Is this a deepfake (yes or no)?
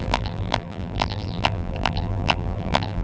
yes